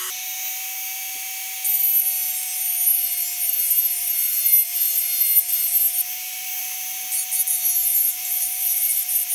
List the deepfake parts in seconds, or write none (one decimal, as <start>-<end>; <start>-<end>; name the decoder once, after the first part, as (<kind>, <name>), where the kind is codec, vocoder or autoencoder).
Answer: 7.9-9.3 (vocoder, BigVGAN v2)